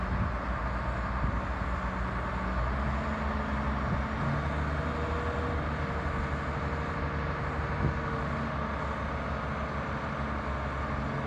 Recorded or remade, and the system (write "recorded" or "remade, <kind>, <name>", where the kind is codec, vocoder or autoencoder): recorded